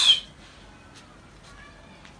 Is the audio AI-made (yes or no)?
no